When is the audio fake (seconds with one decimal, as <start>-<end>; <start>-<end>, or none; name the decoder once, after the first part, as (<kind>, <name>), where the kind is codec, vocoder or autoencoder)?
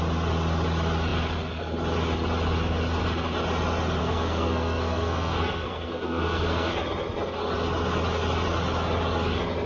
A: 4.0-6.7 (codec, SNAC)